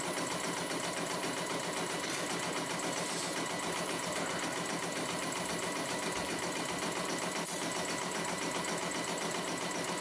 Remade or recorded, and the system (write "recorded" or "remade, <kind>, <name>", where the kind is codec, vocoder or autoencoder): recorded